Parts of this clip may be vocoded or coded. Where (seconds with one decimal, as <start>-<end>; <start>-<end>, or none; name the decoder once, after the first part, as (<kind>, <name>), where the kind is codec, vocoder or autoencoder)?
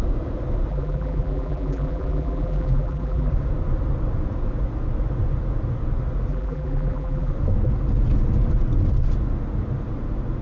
0.7-3.3 (vocoder, BigVGAN v2); 6.3-7.3